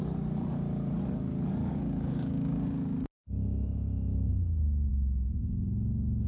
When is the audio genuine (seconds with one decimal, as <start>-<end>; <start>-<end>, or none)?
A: 0.0-1.6; 4.9-6.3